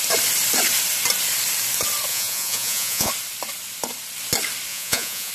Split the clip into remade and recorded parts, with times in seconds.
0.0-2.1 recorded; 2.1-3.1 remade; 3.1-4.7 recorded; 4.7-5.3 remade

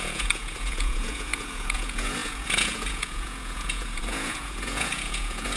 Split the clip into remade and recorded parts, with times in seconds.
0.0-5.6 remade

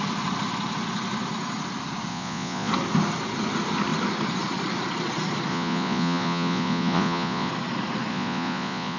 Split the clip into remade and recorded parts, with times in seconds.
0.0-2.1 recorded; 2.1-2.7 remade; 2.7-5.5 recorded; 5.5-7.5 remade; 7.5-8.1 recorded; 8.1-9.0 remade

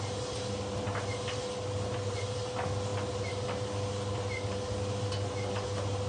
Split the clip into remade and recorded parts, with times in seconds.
0.0-6.1 recorded

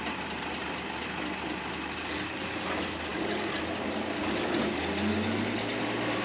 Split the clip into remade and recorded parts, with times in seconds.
0.0-6.2 recorded

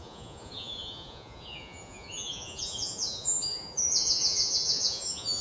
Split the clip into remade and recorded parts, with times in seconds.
0.0-5.4 remade

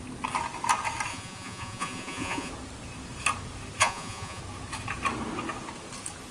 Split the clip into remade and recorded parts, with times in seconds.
0.0-1.1 recorded; 1.1-2.5 remade; 2.5-3.8 recorded; 3.8-4.4 remade; 4.4-6.3 recorded